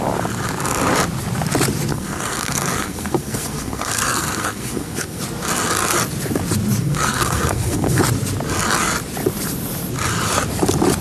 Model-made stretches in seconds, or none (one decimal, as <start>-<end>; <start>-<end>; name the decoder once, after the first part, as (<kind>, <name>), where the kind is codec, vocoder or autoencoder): 1.9-5.2 (codec, SNAC); 6.8-8.0